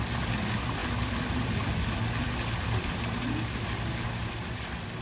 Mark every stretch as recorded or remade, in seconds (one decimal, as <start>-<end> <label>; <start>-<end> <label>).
0.0-5.0 recorded